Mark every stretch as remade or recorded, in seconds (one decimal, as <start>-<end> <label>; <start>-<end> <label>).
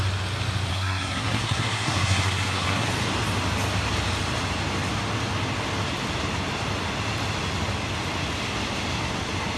0.0-0.7 recorded; 0.7-2.9 remade; 2.9-9.6 recorded